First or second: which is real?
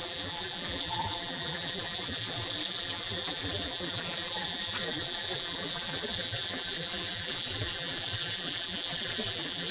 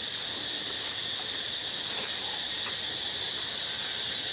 second